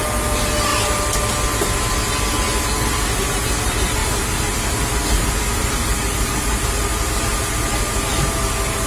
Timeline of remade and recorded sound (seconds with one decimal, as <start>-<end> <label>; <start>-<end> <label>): 0.0-8.9 recorded